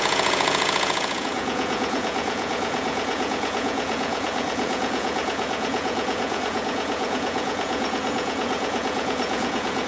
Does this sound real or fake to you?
fake